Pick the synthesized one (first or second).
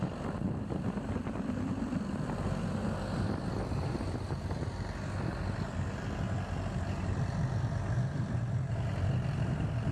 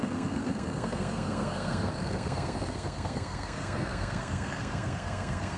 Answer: second